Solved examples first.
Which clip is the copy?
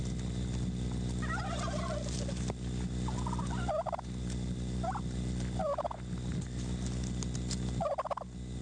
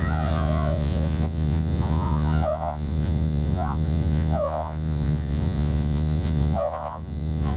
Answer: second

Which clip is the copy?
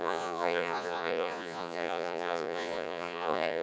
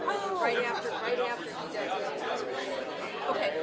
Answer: first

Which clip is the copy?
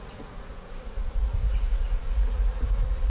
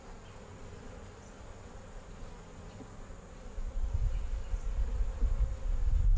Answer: first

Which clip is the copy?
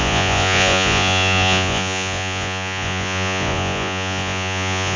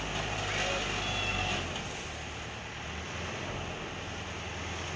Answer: first